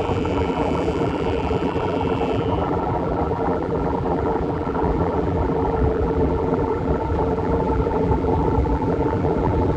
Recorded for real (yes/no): no